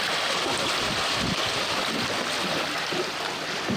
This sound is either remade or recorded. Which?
recorded